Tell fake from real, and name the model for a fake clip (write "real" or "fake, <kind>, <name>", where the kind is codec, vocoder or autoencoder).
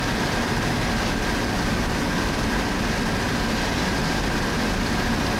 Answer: real